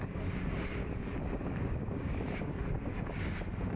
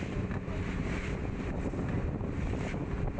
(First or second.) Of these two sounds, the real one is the second